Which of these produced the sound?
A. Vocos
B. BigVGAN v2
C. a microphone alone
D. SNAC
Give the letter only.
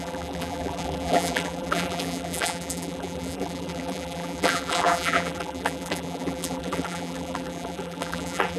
B